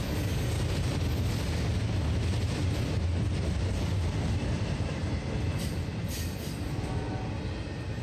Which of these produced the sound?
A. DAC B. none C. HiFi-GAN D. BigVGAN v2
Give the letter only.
B